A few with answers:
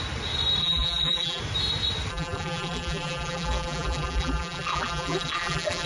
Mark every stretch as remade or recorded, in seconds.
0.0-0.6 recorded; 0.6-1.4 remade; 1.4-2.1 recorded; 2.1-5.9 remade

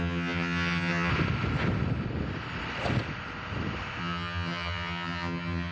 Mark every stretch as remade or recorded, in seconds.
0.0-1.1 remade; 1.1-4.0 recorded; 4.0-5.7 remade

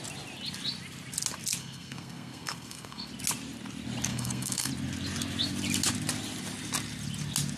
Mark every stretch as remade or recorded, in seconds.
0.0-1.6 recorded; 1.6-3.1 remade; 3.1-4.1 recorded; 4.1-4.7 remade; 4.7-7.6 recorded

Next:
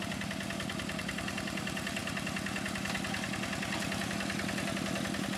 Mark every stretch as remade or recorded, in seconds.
0.0-5.4 recorded

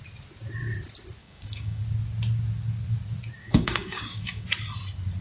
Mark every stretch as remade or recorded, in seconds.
0.0-1.2 recorded; 1.2-1.8 remade; 1.8-3.4 recorded; 3.4-4.5 remade; 4.5-5.2 recorded

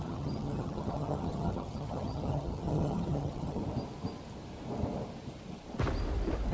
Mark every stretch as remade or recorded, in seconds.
0.0-3.6 remade; 3.6-6.5 recorded

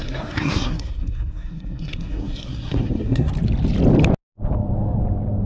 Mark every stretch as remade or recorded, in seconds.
0.0-3.3 remade; 3.3-5.5 recorded